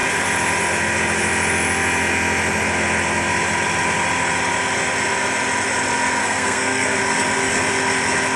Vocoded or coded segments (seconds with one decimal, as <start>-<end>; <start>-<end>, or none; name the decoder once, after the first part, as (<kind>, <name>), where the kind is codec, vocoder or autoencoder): 6.2-7.0 (codec, SNAC)